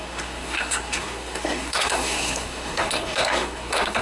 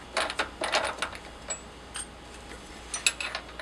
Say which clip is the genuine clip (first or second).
second